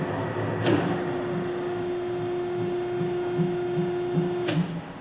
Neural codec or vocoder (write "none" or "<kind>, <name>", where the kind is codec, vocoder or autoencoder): none